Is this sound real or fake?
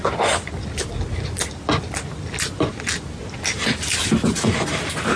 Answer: real